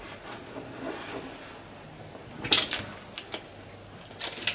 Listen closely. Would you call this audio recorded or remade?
recorded